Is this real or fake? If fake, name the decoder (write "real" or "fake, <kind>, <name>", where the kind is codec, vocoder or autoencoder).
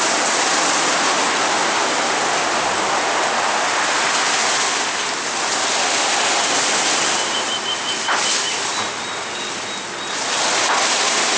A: real